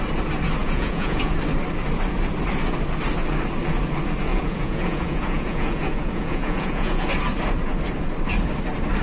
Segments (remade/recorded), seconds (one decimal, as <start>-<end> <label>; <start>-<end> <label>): 0.0-0.6 recorded; 0.6-1.3 remade; 1.3-4.3 recorded; 4.3-7.0 remade; 7.0-9.0 recorded